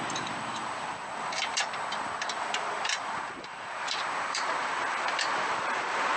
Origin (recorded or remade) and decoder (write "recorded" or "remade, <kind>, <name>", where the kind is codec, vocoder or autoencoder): remade, vocoder, BigVGAN v2